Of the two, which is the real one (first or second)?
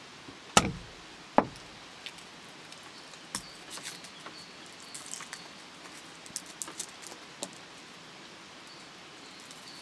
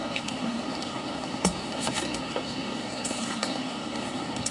first